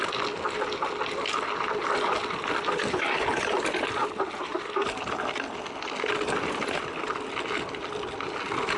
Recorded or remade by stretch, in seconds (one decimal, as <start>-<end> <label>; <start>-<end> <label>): 0.0-8.8 recorded